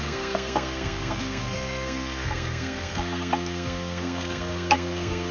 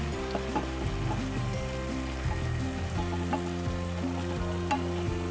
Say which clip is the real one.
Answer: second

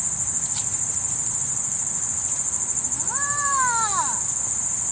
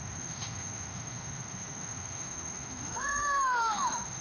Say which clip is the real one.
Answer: first